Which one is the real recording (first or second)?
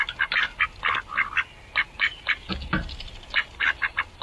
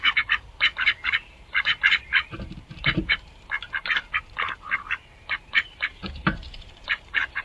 first